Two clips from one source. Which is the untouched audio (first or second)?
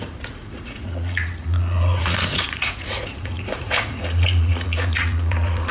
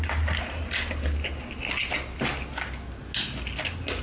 second